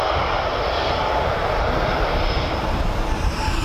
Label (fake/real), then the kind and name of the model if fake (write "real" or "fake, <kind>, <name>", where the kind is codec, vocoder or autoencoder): real